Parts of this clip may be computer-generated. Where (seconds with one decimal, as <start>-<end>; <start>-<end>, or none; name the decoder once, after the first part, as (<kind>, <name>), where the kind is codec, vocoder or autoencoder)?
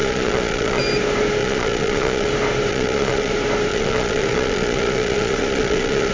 0.0-0.8 (vocoder, Vocos); 1.4-2.3; 2.7-3.3; 3.7-6.1